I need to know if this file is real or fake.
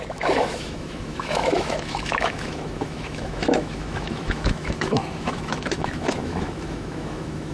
fake